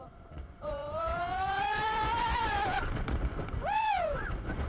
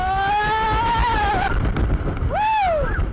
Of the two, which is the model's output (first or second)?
first